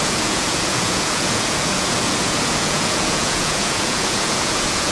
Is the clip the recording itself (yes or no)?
no